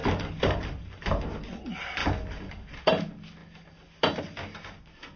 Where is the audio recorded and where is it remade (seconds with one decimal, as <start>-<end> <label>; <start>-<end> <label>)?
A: 0.0-5.2 recorded

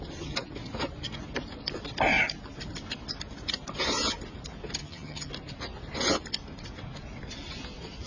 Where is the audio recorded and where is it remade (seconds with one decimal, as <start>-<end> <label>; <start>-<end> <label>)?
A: 0.0-4.8 recorded; 4.8-5.3 remade; 5.3-8.1 recorded

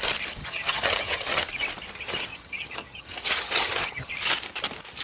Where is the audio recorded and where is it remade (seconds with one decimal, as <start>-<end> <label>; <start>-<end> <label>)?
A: 0.0-0.4 recorded; 0.4-1.5 remade; 1.5-2.3 recorded; 2.3-4.1 remade; 4.1-5.0 recorded

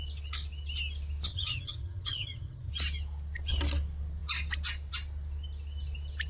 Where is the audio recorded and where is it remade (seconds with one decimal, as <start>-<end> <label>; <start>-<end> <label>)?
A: 0.0-1.3 recorded; 1.3-2.7 remade; 2.7-6.3 recorded